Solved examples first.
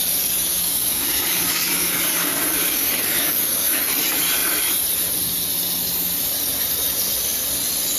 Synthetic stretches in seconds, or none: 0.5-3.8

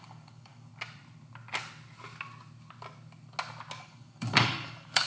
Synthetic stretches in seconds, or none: 0.0-0.7; 3.8-5.1

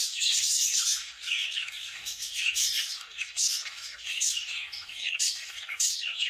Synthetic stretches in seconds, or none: 0.0-6.3

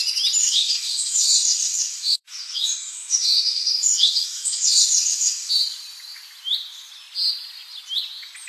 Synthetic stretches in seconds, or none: 0.4-5.5

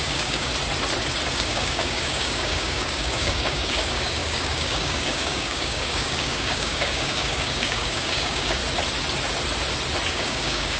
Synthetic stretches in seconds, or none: 0.0-0.5; 1.3-8.6; 10.1-10.8

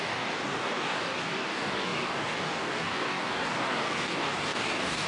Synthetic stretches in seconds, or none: 0.0-5.1

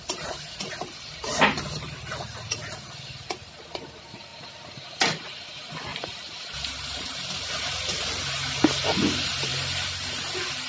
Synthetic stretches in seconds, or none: none